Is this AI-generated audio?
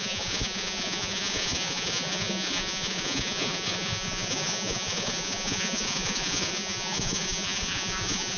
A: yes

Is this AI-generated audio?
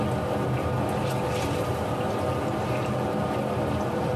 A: no